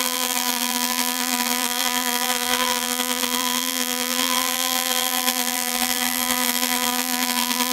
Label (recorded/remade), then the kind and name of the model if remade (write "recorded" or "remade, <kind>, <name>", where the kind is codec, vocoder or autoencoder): remade, vocoder, BigVGAN v2